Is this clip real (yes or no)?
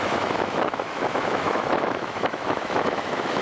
no